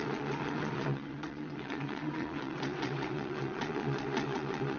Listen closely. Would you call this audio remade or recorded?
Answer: remade